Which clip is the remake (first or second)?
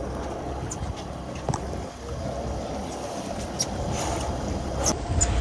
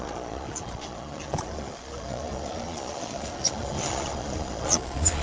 second